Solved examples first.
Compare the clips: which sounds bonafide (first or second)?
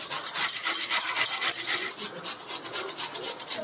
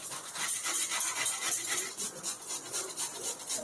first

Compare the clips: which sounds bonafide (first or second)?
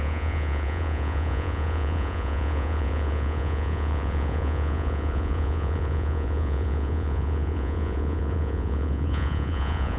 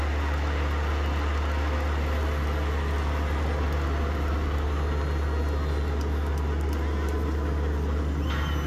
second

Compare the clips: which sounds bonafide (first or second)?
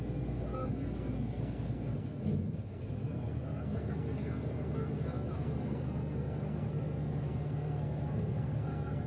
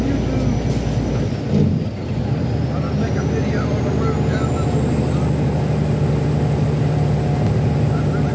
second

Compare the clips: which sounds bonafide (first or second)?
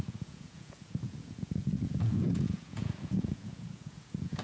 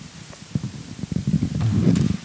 second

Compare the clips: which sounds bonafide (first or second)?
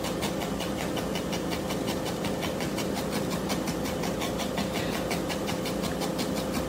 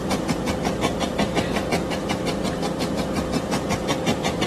first